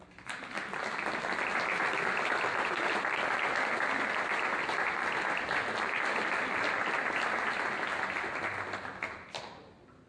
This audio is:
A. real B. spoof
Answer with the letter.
A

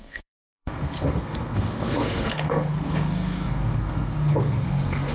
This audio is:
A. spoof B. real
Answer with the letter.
A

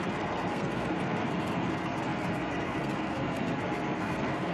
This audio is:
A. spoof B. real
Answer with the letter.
A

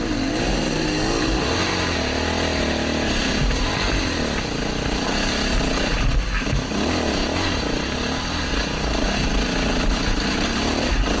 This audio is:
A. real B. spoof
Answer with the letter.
A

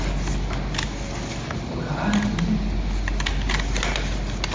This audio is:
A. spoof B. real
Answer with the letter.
B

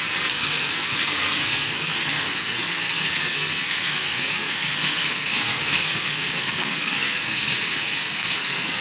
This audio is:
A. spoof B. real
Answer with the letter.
A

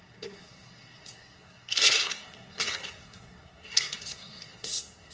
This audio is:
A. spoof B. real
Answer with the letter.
A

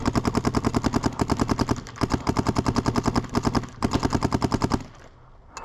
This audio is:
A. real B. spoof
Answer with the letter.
A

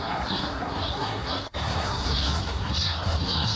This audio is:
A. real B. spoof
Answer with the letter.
B